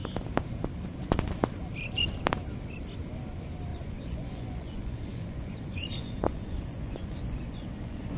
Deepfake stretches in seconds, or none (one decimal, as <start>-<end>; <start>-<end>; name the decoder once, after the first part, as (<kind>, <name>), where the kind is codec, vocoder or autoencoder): 3.7-8.2 (vocoder, Vocos)